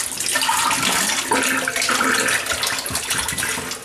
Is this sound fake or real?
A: real